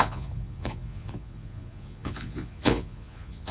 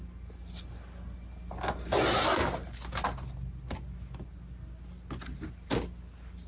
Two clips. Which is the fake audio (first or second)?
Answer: first